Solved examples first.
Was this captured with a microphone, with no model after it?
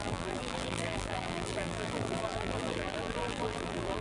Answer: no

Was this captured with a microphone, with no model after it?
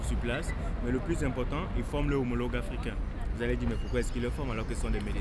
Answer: yes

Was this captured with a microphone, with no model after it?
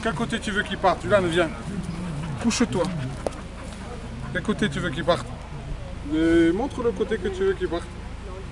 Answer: yes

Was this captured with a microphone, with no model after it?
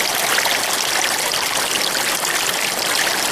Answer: yes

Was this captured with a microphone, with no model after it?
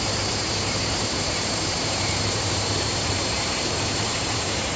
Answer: no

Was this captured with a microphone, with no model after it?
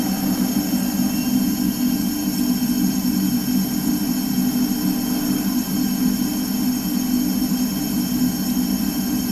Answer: yes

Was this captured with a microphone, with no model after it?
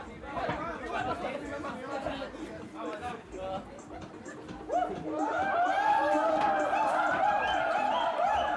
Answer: yes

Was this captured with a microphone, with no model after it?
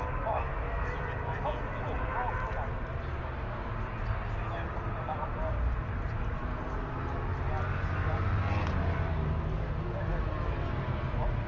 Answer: yes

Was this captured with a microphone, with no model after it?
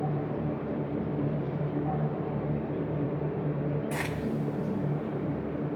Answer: no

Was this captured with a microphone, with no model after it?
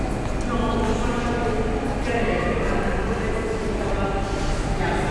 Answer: yes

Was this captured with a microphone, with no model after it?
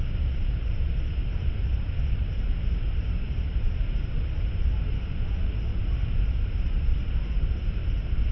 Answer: no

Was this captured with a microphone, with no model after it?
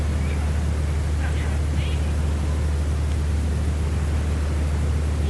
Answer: yes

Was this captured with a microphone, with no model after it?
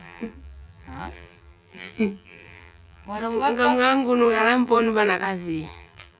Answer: no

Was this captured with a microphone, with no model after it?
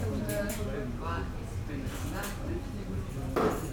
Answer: yes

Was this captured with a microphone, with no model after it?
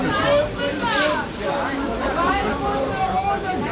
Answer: yes